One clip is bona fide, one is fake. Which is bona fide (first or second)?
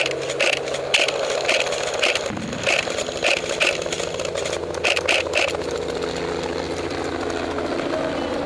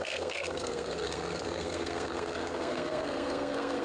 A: first